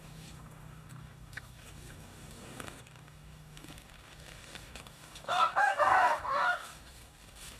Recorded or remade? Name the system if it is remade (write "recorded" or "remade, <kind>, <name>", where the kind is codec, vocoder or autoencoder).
remade, codec, DAC